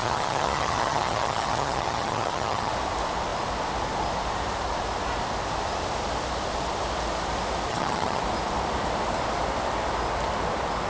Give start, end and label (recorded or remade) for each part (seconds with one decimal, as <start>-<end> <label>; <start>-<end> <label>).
0.0-2.7 remade; 2.7-7.7 recorded; 7.7-8.2 remade; 8.2-10.9 recorded